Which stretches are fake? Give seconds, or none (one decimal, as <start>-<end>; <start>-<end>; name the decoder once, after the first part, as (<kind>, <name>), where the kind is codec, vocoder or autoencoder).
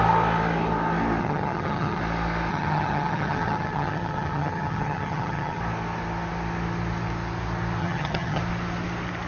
1.2-2.0 (vocoder, HiFi-GAN); 2.5-5.6; 7.8-8.4